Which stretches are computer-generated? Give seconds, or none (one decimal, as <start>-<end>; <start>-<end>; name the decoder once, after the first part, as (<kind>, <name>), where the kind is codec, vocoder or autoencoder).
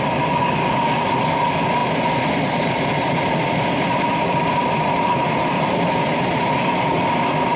none